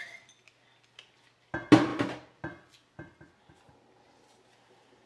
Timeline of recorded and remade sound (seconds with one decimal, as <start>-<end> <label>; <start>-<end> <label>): 0.0-5.1 recorded